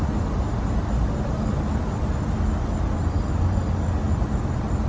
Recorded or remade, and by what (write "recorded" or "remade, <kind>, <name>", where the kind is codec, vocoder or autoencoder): recorded